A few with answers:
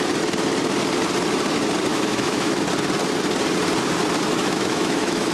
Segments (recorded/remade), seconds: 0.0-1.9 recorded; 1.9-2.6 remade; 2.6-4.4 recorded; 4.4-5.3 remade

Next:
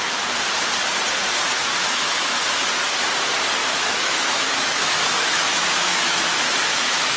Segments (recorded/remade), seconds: 0.0-1.5 recorded; 1.5-2.4 remade; 2.4-3.6 recorded; 3.6-7.2 remade

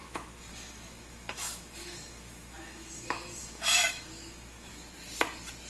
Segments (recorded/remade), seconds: 0.0-4.7 remade; 4.7-5.7 recorded

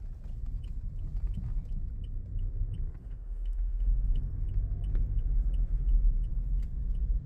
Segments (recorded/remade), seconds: 0.0-3.0 recorded; 3.0-4.2 remade; 4.2-7.3 recorded